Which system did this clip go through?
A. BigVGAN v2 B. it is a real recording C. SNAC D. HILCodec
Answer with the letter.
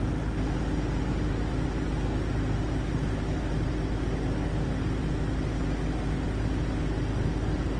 B